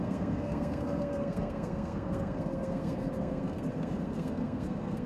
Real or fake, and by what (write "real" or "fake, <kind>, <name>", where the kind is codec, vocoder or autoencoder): fake, codec, SNAC